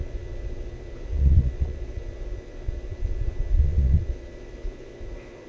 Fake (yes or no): yes